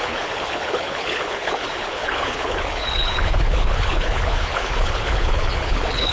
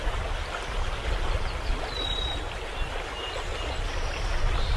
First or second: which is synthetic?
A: first